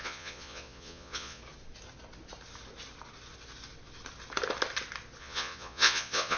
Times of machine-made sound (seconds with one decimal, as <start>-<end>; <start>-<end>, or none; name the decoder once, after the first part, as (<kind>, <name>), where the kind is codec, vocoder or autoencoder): 0.0-1.4 (vocoder, Vocos); 5.2-6.4